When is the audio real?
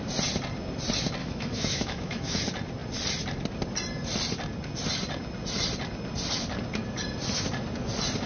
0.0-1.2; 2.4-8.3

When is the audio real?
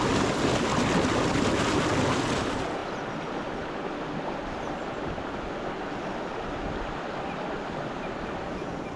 0.0-9.0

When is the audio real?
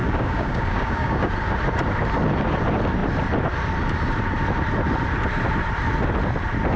1.3-6.8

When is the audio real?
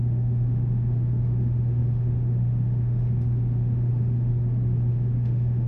4.3-4.9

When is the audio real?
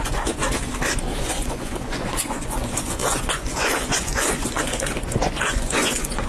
0.4-1.2